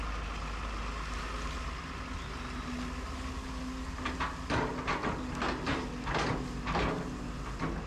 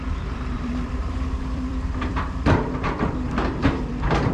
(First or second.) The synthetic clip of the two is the second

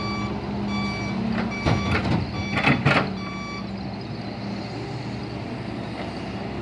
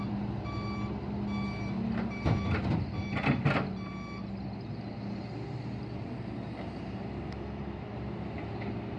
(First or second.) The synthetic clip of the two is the second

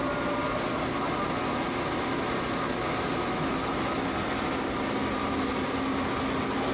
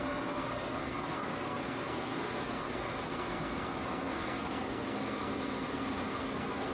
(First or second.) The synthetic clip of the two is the second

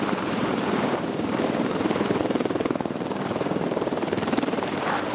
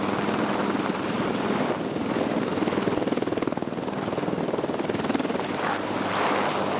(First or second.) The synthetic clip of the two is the first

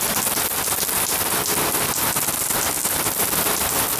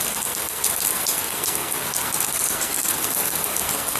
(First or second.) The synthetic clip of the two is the second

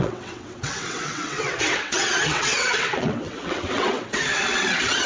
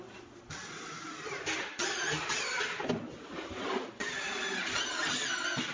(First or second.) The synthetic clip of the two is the first